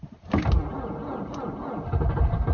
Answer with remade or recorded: recorded